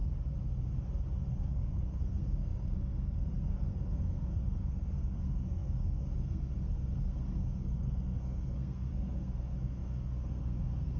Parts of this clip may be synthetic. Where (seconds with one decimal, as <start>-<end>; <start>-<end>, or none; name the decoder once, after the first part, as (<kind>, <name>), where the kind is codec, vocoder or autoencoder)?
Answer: 1.3-11.0 (codec, SNAC)